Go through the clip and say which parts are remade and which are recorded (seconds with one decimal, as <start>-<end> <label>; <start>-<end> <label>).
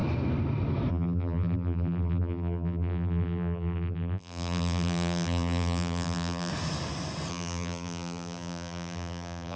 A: 0.0-0.9 recorded; 0.9-6.5 remade; 6.5-7.3 recorded; 7.3-9.6 remade